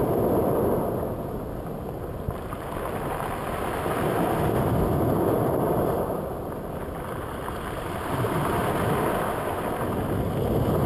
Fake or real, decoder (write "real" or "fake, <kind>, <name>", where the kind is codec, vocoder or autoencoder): real